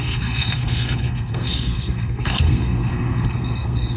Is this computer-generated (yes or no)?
yes